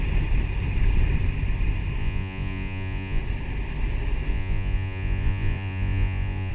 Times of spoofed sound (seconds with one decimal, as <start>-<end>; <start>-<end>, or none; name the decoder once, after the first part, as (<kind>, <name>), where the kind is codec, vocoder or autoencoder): 2.0-3.2 (vocoder, Vocos); 4.3-6.5